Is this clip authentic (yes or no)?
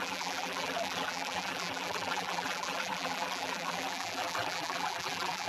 no